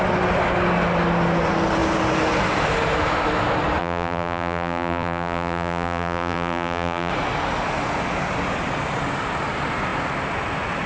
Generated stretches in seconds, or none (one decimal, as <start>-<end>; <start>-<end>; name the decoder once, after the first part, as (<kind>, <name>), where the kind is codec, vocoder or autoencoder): 3.8-7.1 (vocoder, BigVGAN v2)